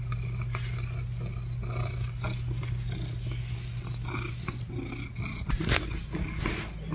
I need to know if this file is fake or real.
real